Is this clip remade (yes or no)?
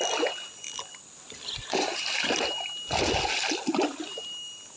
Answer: no